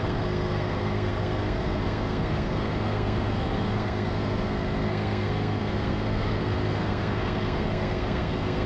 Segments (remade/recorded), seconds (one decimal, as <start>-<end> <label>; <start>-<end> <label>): 0.0-8.7 remade